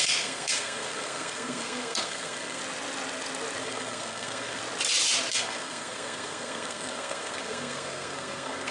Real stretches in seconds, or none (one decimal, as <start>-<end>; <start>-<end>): 2.6-3.6; 4.6-5.3